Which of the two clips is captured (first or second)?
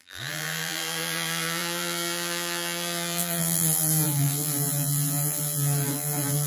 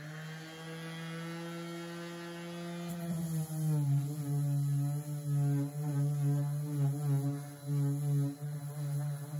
second